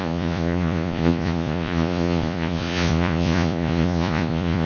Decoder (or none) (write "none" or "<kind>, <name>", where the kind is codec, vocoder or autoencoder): vocoder, Vocos